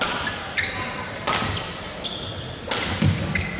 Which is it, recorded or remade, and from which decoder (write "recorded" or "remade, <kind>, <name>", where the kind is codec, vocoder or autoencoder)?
recorded